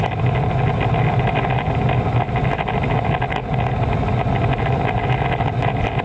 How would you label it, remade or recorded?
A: recorded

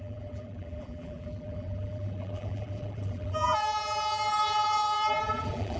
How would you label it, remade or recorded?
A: remade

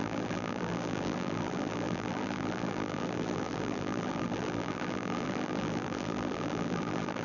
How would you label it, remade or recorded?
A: remade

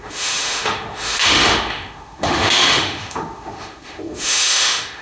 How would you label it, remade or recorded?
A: remade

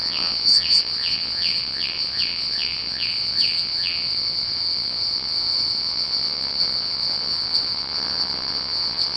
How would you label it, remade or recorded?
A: remade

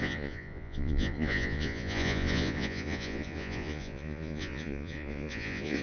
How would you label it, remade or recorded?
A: remade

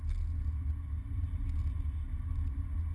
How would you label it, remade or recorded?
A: recorded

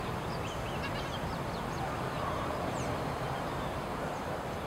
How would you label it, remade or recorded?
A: recorded